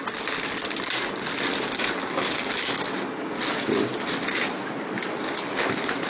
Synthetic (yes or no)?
no